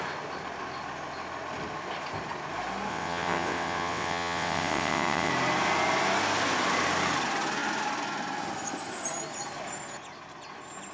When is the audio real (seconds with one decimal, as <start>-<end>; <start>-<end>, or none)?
0.0-2.9; 5.3-10.9